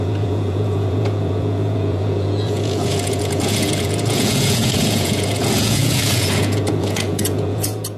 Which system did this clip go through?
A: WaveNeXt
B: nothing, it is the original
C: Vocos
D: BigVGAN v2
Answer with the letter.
C